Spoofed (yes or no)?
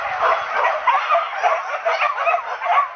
no